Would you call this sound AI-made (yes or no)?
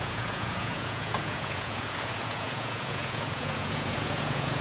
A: yes